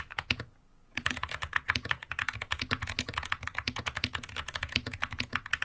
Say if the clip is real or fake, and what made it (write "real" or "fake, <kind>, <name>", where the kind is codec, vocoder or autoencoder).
fake, vocoder, Vocos